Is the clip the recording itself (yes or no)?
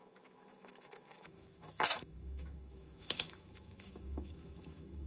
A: no